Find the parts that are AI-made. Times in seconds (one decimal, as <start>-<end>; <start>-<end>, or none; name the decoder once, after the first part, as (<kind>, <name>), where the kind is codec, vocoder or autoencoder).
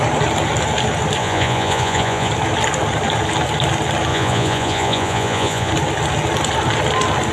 1.2-2.3 (vocoder, Vocos); 4.1-5.7